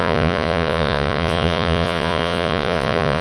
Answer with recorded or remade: remade